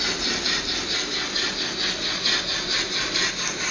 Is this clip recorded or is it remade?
recorded